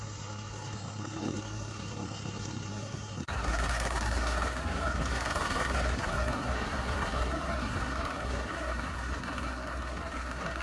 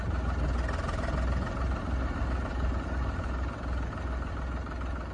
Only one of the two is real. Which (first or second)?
second